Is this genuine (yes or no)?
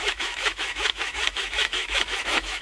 no